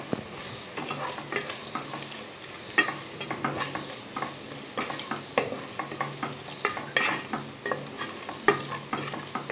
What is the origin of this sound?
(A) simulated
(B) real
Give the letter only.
B